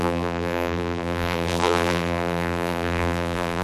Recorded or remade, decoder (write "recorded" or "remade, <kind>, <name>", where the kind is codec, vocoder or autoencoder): remade, vocoder, BigVGAN v2